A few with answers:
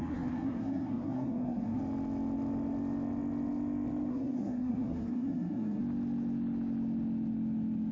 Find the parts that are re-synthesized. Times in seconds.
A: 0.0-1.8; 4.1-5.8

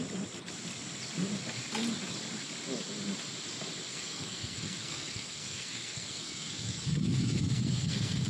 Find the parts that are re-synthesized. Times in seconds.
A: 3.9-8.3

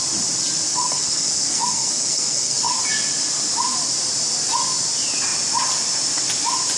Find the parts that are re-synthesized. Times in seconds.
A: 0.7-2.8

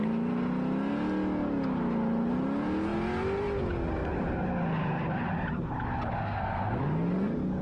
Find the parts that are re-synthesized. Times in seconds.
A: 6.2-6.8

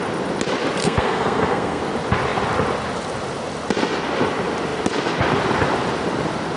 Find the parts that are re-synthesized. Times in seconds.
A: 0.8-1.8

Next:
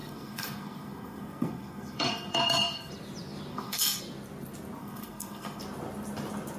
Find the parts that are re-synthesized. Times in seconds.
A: 0.0-2.9; 3.5-4.0; 4.8-5.6

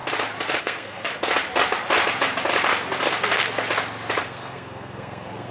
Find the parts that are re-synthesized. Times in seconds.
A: 0.6-1.1; 4.2-5.5

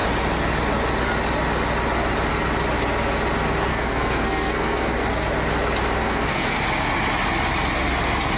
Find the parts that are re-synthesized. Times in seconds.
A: 3.7-5.3; 6.0-6.6